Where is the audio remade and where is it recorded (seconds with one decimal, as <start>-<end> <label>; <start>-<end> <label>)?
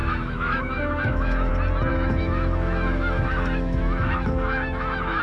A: 0.0-1.5 remade; 1.5-1.9 recorded; 1.9-5.2 remade